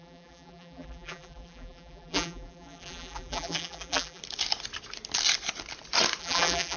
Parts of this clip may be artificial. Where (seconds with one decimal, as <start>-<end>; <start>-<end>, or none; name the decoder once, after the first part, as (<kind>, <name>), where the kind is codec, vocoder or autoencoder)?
0.0-4.2 (vocoder, BigVGAN v2); 6.2-6.8